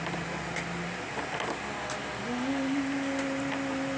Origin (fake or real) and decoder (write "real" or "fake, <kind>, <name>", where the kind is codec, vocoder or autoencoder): real